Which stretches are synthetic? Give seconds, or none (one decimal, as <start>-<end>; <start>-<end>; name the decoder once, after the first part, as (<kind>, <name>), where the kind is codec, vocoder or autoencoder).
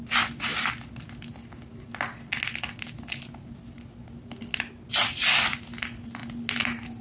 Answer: none